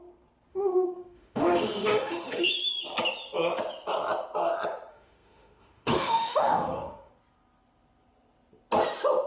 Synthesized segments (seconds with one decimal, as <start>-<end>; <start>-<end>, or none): 0.5-2.5; 4.9-7.1

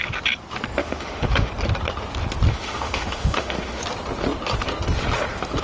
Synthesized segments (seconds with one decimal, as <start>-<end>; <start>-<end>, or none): 0.8-1.5; 2.5-3.8